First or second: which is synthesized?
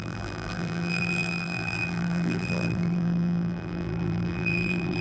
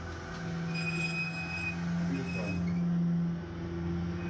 first